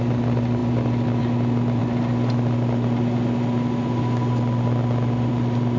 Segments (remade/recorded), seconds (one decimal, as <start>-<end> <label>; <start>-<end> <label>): 0.0-5.8 recorded